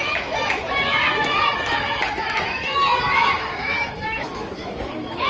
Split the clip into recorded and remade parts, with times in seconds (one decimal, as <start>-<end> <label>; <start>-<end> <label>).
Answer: 0.0-5.3 remade